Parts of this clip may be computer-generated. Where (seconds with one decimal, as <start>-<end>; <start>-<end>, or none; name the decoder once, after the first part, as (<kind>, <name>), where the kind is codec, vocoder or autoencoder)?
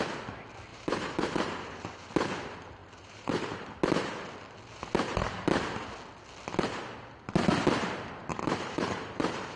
0.7-2.1 (vocoder, BigVGAN v2); 2.8-3.7; 8.3-9.6